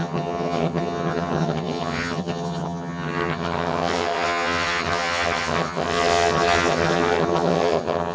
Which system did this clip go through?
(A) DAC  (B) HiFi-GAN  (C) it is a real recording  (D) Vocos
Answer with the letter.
B